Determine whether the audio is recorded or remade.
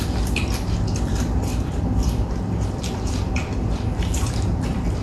remade